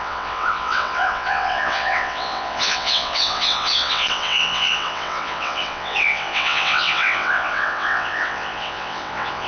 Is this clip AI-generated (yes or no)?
yes